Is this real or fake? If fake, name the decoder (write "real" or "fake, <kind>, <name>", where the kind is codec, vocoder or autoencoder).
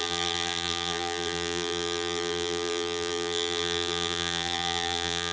fake, vocoder, BigVGAN v2